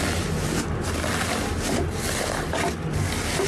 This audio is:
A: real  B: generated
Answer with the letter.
A